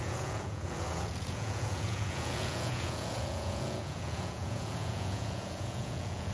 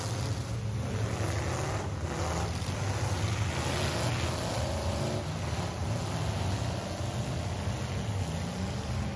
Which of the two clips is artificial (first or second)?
first